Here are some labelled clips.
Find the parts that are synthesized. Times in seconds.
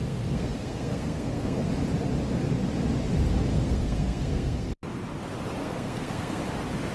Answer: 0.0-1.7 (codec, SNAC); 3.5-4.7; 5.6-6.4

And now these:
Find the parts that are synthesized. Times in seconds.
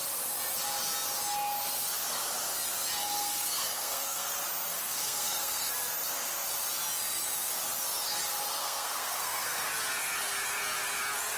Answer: 3.0-4.3 (codec, SNAC); 4.7-5.7; 8.6-9.7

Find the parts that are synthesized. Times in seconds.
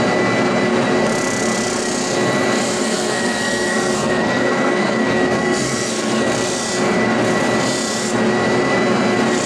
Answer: 2.8-6.3 (codec, SNAC)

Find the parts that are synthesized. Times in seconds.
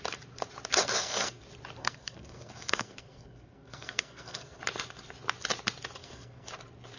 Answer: 0.7-1.4 (codec, SNAC); 1.8-4.6; 6.0-6.5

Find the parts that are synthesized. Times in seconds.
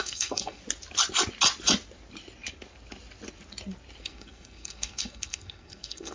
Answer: 0.0-0.6 (codec, SNAC); 4.0-6.1